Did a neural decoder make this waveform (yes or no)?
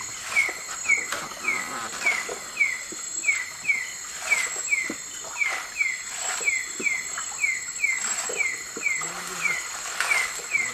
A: no